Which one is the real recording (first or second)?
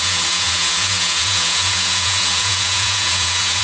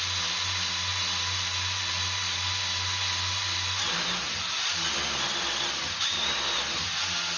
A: second